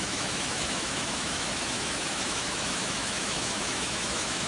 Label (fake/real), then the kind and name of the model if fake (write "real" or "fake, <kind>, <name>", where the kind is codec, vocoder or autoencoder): fake, autoencoder, DAC-VAE